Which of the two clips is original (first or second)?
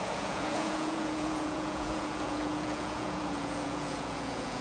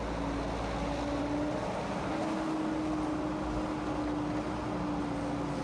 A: second